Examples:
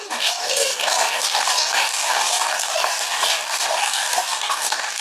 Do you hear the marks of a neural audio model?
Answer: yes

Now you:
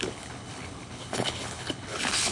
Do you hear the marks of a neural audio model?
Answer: yes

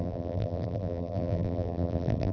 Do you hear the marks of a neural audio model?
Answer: yes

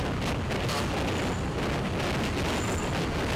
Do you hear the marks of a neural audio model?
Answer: no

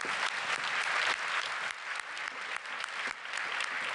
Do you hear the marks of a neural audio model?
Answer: no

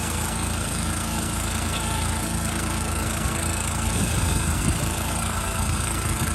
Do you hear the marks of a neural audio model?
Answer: yes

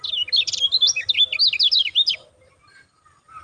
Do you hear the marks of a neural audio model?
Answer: no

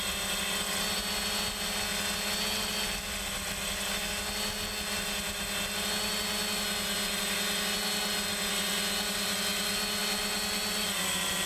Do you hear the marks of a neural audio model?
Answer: no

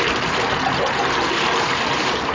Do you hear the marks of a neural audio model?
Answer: no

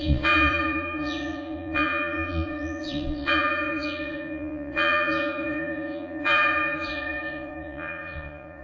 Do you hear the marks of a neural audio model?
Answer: yes